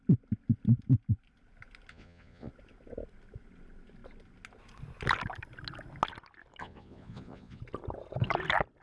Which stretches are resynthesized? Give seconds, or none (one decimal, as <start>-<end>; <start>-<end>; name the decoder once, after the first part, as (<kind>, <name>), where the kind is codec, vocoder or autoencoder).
1.9-2.5 (vocoder, Vocos); 6.6-7.6